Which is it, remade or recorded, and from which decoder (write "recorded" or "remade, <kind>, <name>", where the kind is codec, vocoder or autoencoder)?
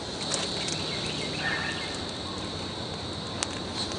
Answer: recorded